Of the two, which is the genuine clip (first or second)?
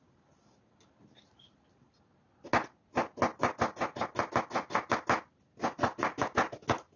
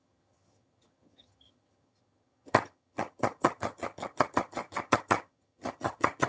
first